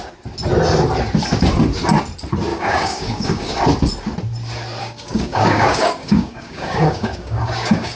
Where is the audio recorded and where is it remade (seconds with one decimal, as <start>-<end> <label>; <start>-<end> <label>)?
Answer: 0.0-2.5 recorded; 2.5-3.5 remade; 3.5-4.8 recorded; 4.8-8.0 remade